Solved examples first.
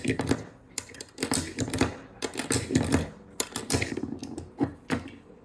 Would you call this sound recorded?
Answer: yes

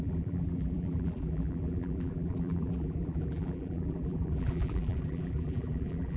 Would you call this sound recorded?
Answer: no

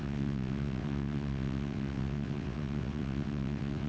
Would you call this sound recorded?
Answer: no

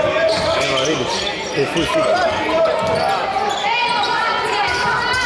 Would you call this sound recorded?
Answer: no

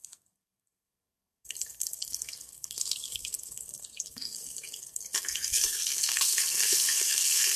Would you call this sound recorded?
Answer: no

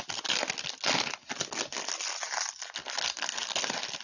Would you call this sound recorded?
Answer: yes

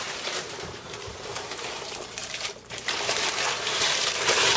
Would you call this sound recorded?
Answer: no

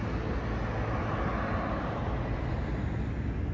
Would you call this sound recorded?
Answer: yes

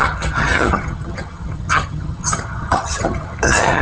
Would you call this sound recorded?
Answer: no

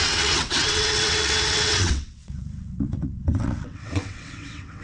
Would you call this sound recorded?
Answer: no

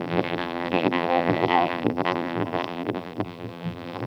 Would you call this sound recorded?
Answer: no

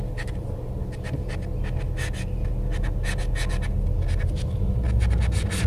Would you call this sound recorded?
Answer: yes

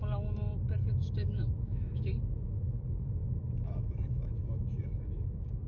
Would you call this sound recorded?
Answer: no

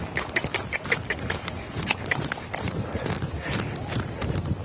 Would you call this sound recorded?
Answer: yes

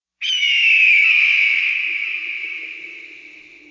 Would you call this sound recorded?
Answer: yes